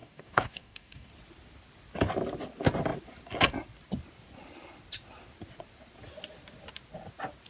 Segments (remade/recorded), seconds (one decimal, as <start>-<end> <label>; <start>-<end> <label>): 0.0-1.1 remade; 1.1-7.5 recorded